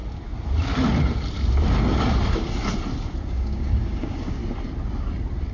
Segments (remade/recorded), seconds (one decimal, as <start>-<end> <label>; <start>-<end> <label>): 0.0-3.3 recorded; 3.3-4.4 remade; 4.4-5.5 recorded